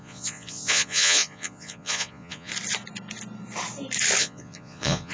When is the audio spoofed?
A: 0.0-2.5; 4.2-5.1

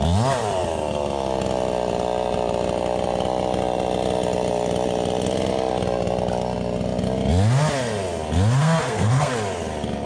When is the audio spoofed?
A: 8.6-9.3